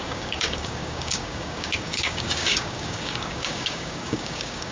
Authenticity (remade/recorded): remade